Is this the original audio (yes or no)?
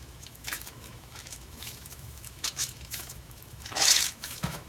no